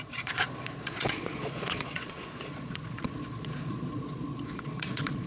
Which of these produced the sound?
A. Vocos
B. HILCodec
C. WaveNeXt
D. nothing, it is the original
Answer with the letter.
A